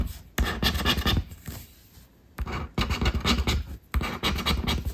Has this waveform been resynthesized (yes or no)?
no